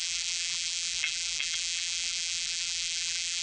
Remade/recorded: remade